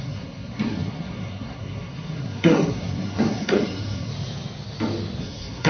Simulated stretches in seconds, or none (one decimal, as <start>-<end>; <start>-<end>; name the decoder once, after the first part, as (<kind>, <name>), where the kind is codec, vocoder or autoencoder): 0.0-4.1 (codec, SNAC); 5.2-5.7